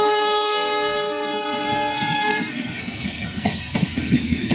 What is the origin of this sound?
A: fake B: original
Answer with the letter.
A